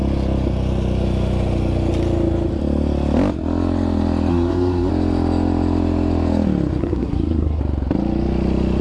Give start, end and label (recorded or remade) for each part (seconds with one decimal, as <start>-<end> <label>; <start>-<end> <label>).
0.0-4.3 recorded; 4.3-4.9 remade; 4.9-6.8 recorded; 6.8-7.6 remade; 7.6-8.8 recorded